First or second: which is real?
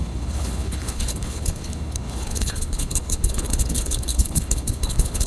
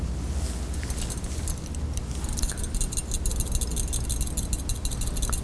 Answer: second